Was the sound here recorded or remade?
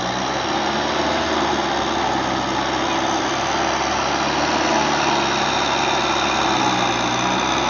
recorded